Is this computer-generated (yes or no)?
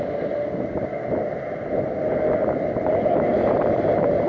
no